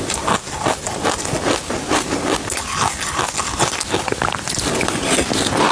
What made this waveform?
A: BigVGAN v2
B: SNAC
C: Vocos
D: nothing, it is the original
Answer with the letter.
D